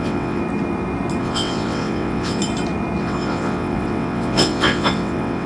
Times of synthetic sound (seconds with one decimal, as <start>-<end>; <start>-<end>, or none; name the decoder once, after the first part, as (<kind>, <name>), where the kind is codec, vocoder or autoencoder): 0.0-0.4 (vocoder, WaveNeXt); 1.2-2.4; 3.0-5.5